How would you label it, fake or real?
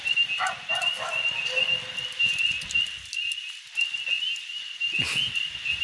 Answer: real